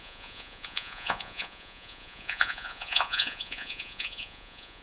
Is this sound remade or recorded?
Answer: remade